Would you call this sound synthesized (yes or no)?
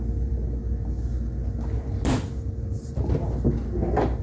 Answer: no